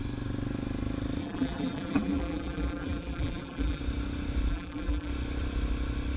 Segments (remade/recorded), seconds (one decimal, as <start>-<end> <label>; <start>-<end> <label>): 0.0-1.2 recorded; 1.2-3.8 remade; 3.8-4.5 recorded; 4.5-5.1 remade; 5.1-6.2 recorded